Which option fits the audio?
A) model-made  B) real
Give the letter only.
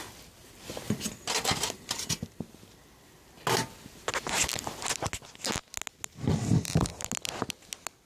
B